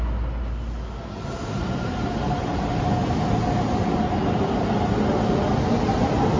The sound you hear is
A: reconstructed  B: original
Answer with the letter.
B